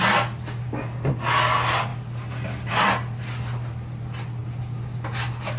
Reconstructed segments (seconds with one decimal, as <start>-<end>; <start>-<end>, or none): none